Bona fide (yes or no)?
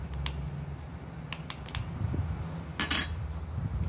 yes